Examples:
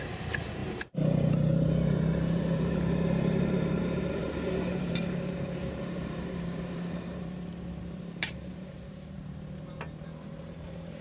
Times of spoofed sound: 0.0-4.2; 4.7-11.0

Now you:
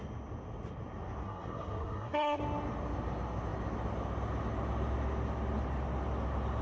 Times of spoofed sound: 1.2-2.4

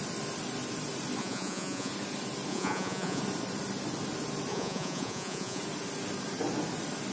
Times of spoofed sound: 1.2-1.9; 2.5-3.2; 4.5-5.6